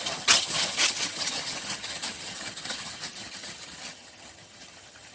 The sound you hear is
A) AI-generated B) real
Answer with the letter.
A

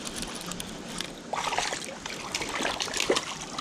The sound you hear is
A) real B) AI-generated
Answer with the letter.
A